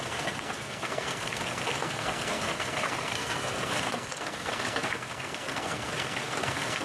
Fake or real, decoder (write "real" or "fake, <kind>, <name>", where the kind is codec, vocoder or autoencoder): fake, codec, SNAC